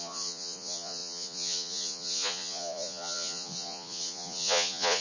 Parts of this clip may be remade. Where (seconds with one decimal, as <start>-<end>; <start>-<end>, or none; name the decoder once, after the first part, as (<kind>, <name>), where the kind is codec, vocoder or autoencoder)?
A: 0.0-5.0 (vocoder, Vocos)